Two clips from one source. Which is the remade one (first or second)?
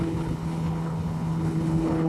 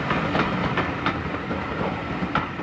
first